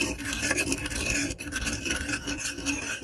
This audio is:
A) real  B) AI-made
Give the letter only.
B